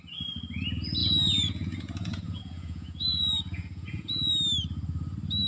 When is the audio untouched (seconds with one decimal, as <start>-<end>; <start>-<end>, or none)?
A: 0.0-1.0; 4.3-5.5